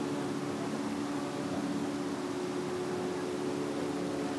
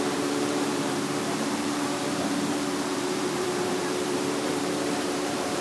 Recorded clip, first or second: first